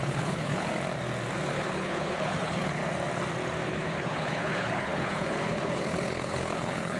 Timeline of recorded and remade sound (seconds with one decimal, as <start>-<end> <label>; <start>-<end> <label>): 0.0-0.7 remade; 0.7-1.5 recorded; 1.5-2.8 remade; 2.8-3.7 recorded; 3.7-7.0 remade

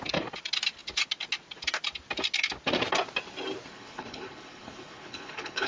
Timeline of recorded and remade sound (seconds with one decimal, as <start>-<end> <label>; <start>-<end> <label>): 0.0-3.7 recorded; 3.7-5.7 remade

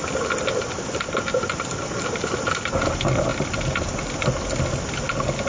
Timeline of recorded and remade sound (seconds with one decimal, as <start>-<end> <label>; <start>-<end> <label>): 0.0-5.5 recorded

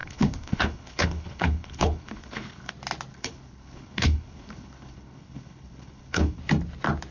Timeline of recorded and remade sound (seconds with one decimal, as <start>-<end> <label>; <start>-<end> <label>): 0.0-2.7 remade; 2.7-3.1 recorded; 3.1-6.4 remade; 6.4-7.1 recorded